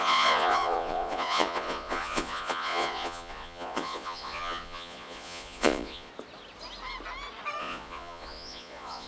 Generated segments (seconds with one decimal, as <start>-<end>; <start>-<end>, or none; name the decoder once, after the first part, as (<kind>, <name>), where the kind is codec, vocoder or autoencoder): 0.0-6.1 (vocoder, Vocos); 7.6-9.1